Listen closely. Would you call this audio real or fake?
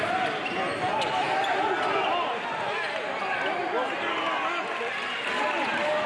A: real